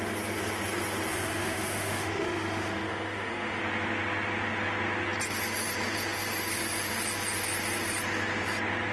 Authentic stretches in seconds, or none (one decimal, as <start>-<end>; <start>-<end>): 0.0-1.1; 3.6-8.9